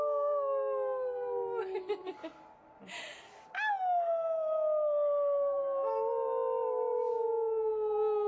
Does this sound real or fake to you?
real